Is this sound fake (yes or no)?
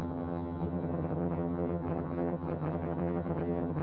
yes